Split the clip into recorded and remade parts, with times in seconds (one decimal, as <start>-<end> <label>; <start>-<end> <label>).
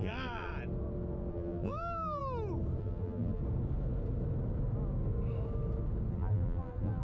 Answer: 0.0-0.5 remade; 0.5-1.3 recorded; 1.3-2.2 remade; 2.2-2.8 recorded; 2.8-3.4 remade; 3.4-6.1 recorded; 6.1-7.0 remade